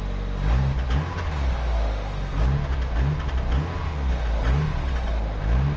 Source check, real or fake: real